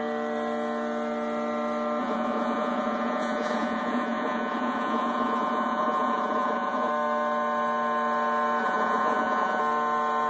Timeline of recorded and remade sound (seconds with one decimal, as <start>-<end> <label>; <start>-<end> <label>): 0.0-2.0 recorded; 2.0-6.9 remade; 6.9-8.6 recorded; 8.6-9.6 remade; 9.6-10.3 recorded